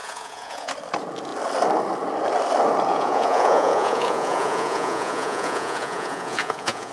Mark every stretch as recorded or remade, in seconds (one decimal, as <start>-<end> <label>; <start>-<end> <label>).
0.0-0.7 remade; 0.7-2.9 recorded; 2.9-6.9 remade